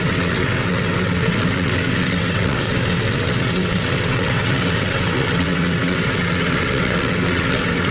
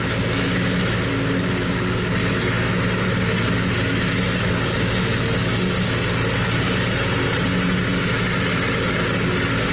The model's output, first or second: first